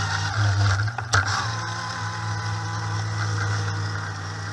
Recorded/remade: recorded